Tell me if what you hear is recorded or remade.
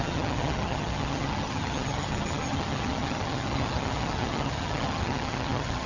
remade